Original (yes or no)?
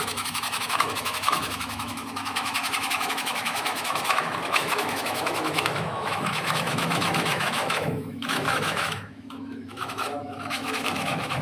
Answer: no